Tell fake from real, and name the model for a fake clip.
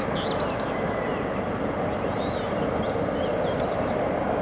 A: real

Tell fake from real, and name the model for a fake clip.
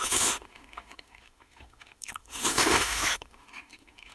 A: fake, autoencoder, DAC-VAE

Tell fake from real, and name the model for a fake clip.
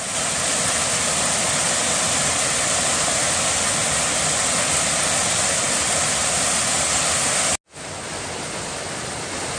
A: real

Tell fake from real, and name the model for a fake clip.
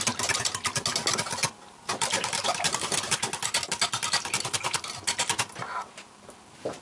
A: real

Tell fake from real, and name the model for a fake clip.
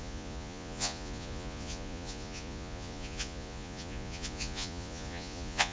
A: fake, vocoder, Vocos